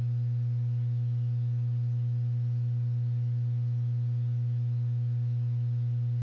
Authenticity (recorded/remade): recorded